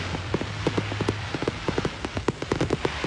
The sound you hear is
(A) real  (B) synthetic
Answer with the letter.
A